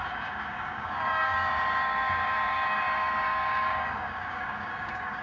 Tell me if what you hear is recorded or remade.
remade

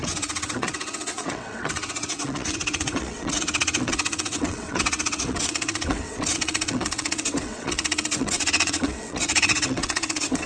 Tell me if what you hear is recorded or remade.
remade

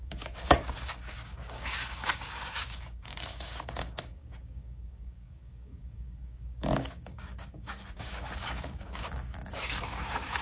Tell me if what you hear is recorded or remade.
remade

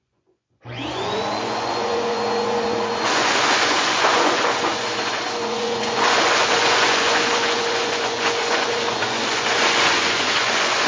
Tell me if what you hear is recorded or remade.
remade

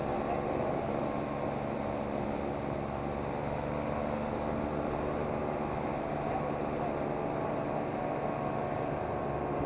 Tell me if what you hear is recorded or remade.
recorded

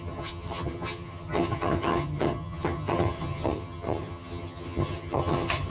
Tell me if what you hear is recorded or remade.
remade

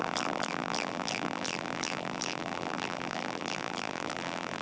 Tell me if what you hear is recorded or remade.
remade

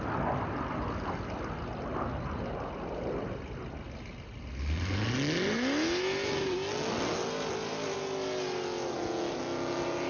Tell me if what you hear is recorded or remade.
recorded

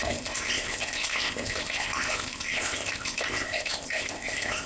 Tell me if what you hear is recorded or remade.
remade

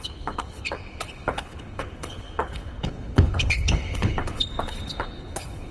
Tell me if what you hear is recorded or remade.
remade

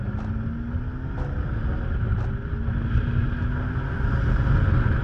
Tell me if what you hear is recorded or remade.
recorded